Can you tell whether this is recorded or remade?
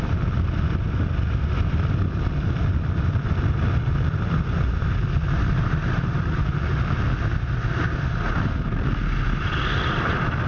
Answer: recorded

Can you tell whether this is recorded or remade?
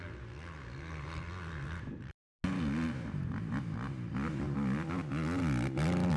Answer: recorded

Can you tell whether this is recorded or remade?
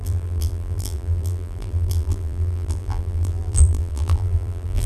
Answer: remade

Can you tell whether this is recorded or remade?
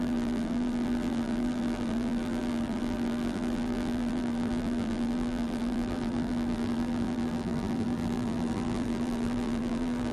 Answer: remade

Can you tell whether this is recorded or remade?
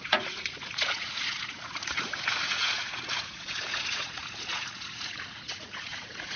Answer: remade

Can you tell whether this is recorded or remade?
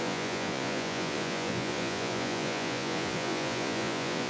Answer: remade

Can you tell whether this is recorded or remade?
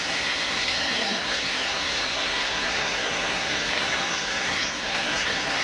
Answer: remade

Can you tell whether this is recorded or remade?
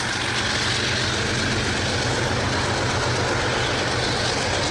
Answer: recorded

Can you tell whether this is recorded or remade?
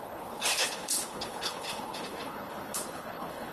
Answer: remade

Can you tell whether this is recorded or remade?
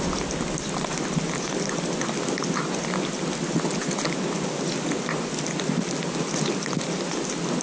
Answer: recorded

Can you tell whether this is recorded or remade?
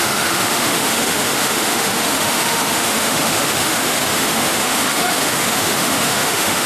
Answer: remade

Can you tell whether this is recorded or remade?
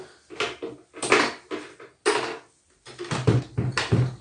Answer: recorded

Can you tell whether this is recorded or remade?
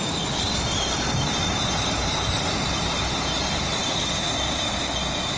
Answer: recorded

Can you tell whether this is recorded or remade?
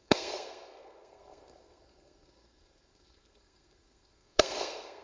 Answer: remade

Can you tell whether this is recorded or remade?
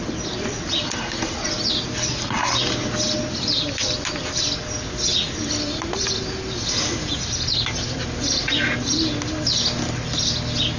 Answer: recorded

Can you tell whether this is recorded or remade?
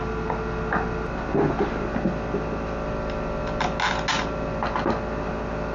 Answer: recorded